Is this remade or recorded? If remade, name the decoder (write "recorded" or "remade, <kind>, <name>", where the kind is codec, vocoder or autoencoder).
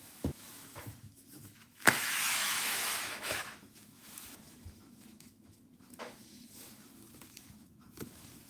remade, autoencoder, DAC-VAE